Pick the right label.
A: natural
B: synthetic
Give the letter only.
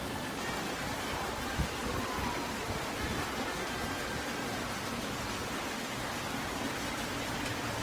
A